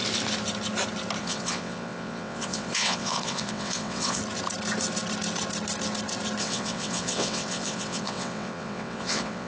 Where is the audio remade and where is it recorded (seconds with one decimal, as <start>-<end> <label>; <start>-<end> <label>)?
0.0-1.2 recorded; 1.2-4.2 remade; 4.2-6.4 recorded; 6.4-9.5 remade